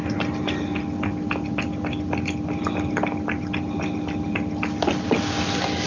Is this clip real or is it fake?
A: real